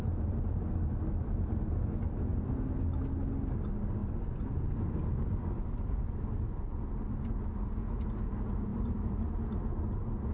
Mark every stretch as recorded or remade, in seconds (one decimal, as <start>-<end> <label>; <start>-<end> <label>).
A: 0.0-8.7 recorded; 8.7-9.2 remade; 9.2-10.3 recorded